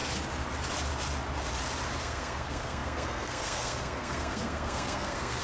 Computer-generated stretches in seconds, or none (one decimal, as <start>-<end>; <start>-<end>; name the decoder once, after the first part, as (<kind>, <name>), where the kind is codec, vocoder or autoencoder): 2.0-5.4 (codec, SNAC)